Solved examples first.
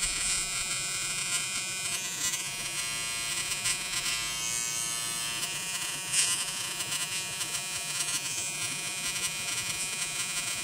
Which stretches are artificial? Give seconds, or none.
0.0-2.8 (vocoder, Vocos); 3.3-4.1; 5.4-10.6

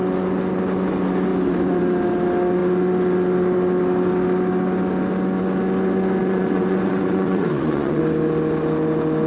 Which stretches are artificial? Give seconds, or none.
6.2-8.0 (vocoder, Vocos)

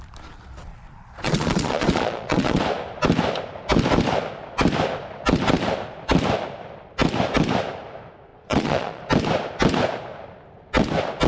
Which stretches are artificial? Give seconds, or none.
0.7-2.6 (vocoder, Vocos); 8.3-9.0

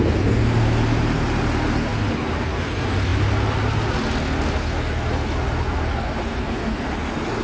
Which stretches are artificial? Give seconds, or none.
none

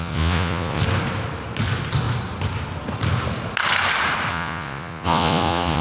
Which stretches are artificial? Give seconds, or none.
0.0-0.8 (vocoder, Vocos); 4.3-5.8